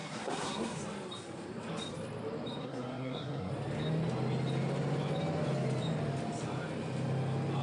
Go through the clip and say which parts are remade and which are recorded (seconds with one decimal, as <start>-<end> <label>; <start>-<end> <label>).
0.0-0.8 remade; 0.8-2.6 recorded; 2.6-3.5 remade; 3.5-7.6 recorded